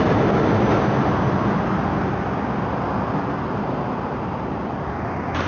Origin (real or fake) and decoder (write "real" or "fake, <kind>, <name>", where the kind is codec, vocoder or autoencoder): real